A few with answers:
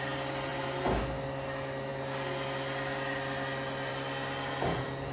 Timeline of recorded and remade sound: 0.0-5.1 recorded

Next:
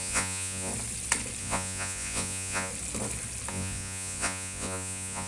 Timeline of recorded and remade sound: 0.0-0.7 remade; 0.7-1.4 recorded; 1.4-2.7 remade; 2.7-3.5 recorded; 3.5-5.3 remade

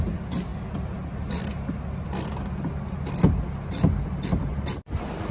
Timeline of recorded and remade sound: 0.0-5.3 recorded

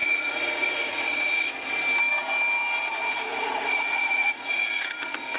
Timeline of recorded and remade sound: 0.0-1.5 remade; 1.5-3.3 recorded; 3.3-4.6 remade; 4.6-5.4 recorded

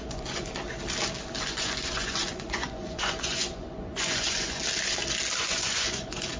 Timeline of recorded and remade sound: 0.0-0.5 remade; 0.5-1.4 recorded; 1.4-4.6 remade; 4.6-5.4 recorded; 5.4-6.4 remade

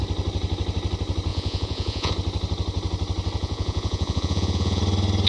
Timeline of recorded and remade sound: 0.0-1.3 recorded; 1.3-2.1 remade; 2.1-3.4 recorded; 3.4-4.8 remade; 4.8-5.3 recorded